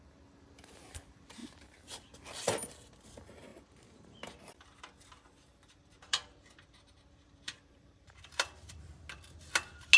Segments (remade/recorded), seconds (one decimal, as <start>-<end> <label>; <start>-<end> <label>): 0.0-1.4 recorded; 1.4-2.1 remade; 2.1-3.5 recorded; 3.5-4.8 remade; 4.8-5.5 recorded; 5.5-8.7 remade; 8.7-10.0 recorded